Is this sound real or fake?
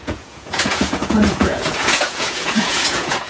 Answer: fake